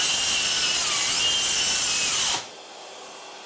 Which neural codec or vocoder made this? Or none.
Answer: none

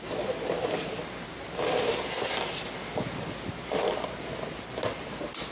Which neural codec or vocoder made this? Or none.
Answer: none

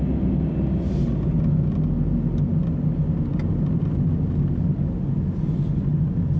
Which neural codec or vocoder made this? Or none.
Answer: none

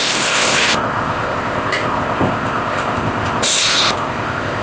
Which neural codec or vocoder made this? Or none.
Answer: codec, ZipCodec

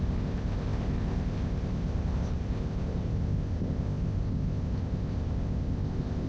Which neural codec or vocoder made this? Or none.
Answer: codec, ZipCodec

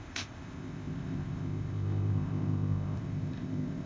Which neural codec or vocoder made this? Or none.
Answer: codec, ZipCodec